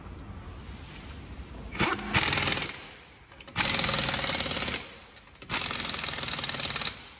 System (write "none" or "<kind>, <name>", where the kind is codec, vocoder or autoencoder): none